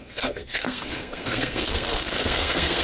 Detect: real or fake fake